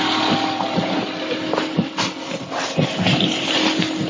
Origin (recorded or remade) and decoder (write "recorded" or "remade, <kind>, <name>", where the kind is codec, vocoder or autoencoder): recorded